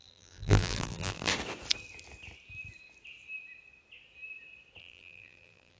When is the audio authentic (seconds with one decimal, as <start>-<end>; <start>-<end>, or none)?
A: 1.3-4.8

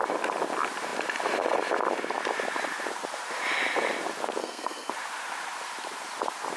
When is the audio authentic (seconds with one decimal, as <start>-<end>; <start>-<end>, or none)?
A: 0.0-4.4; 4.9-6.6

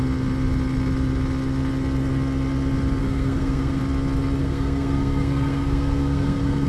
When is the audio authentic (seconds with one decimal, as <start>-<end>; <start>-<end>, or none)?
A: 0.0-3.0; 3.8-4.4

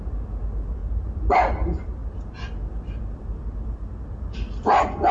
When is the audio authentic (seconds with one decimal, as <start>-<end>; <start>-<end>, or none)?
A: 0.0-5.1

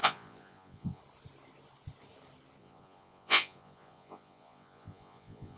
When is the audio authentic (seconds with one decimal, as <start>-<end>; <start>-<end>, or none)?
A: 1.0-2.6